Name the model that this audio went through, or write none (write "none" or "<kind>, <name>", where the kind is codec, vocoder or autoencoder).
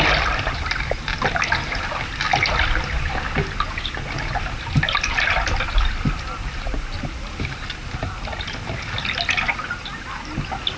none